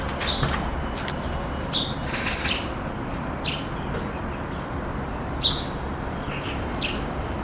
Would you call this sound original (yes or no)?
yes